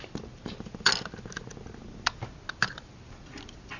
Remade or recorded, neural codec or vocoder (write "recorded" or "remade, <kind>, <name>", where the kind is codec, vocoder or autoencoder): recorded